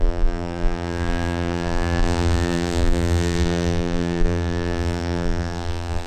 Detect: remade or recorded remade